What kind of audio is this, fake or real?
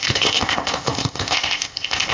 fake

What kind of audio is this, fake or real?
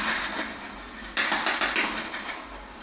real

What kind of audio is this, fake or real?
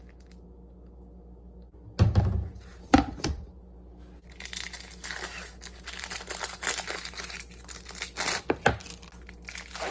real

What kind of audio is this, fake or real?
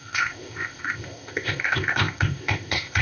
fake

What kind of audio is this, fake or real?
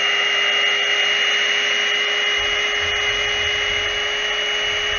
real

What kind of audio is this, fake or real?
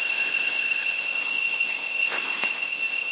fake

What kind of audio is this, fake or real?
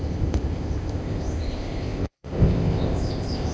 fake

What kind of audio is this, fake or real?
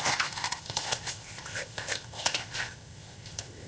fake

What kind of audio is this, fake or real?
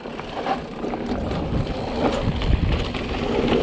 real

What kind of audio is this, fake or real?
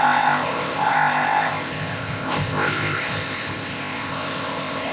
fake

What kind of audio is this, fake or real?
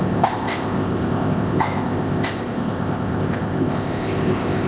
fake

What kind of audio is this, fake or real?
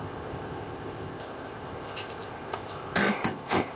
fake